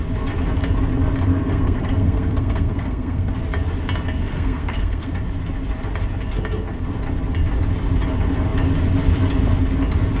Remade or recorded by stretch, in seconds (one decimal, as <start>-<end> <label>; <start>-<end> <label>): 0.0-1.3 recorded; 1.3-3.3 remade; 3.3-4.3 recorded; 4.3-5.1 remade; 5.1-10.2 recorded